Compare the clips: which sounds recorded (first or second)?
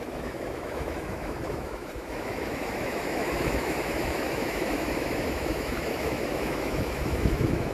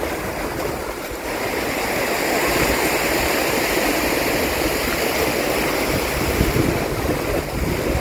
second